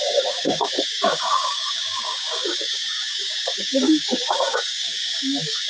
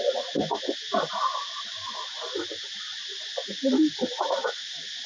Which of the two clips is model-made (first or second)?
first